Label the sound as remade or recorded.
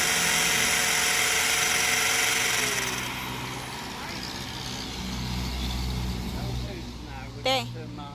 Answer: recorded